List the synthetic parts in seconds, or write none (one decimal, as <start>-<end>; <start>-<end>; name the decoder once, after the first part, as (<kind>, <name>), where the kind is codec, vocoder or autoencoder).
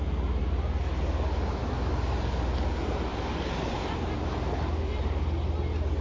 none